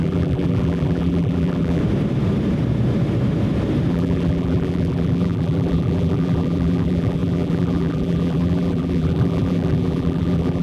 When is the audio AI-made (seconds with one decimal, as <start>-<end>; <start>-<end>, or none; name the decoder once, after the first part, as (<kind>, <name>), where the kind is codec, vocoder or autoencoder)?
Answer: 0.0-1.8 (vocoder, BigVGAN v2); 3.9-10.6